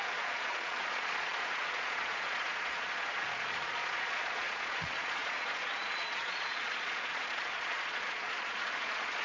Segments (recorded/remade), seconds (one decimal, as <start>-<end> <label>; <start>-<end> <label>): 0.0-9.2 remade